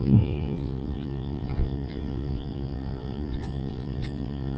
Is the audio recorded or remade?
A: remade